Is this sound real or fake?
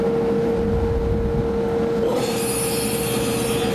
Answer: real